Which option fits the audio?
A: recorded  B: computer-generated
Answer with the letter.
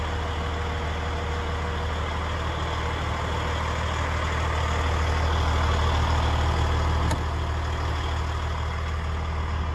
A